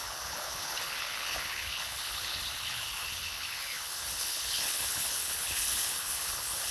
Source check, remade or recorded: remade